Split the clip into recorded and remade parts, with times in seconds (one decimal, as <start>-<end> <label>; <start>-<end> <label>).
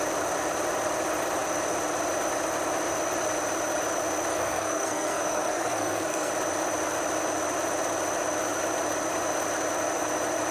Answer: 0.0-4.3 recorded; 4.3-6.3 remade; 6.3-10.5 recorded